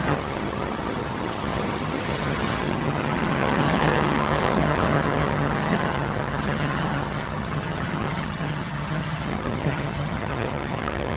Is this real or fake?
fake